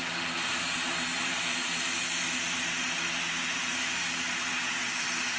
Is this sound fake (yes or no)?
no